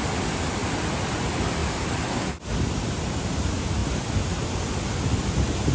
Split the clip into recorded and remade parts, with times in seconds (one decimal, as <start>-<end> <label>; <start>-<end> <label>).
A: 0.0-1.6 recorded; 1.6-2.4 remade; 2.4-5.7 recorded